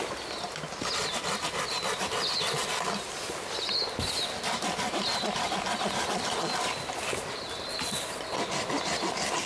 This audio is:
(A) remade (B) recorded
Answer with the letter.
B